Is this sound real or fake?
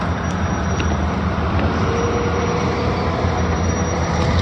real